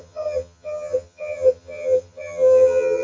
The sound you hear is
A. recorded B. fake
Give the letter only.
B